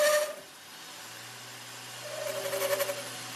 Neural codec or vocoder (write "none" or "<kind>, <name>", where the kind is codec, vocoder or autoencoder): none